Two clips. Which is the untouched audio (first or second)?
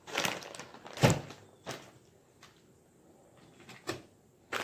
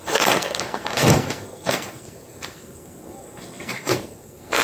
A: first